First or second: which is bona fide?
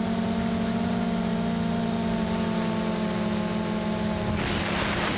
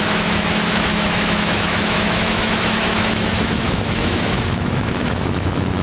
first